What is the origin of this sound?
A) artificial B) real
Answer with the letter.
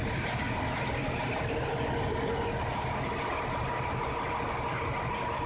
B